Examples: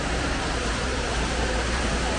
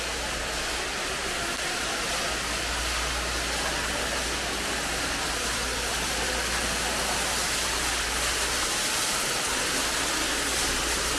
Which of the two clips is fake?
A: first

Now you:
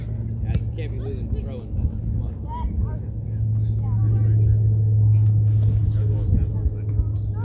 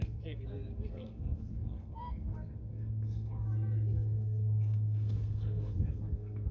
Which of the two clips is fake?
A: second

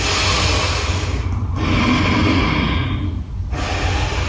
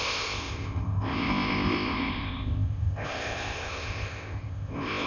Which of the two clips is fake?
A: second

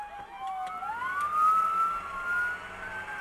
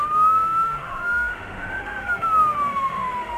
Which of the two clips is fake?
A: second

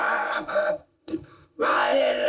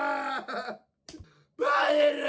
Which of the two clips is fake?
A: first